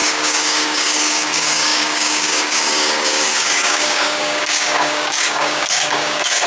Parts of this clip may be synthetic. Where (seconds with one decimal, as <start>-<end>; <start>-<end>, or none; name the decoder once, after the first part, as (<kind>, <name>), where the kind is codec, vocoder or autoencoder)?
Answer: 0.0-6.5 (codec, DAC)